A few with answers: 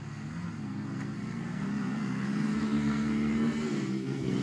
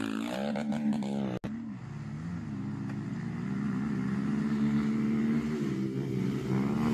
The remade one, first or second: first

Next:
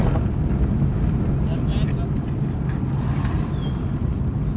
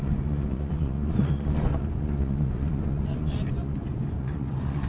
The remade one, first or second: second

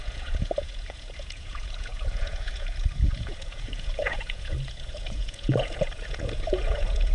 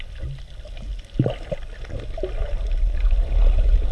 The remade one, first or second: first